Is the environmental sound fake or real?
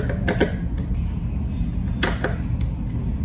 real